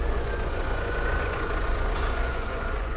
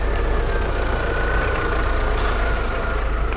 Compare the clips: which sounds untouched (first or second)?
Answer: second